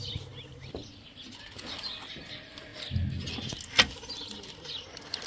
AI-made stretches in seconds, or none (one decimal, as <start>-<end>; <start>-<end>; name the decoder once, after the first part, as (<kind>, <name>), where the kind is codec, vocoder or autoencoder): none